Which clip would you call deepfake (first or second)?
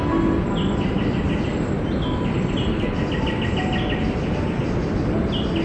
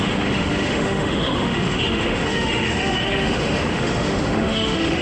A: second